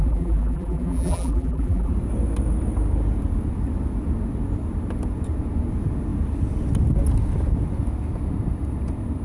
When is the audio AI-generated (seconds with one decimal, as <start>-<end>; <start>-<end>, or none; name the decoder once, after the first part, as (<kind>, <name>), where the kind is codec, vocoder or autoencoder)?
0.0-1.9 (vocoder, BigVGAN v2)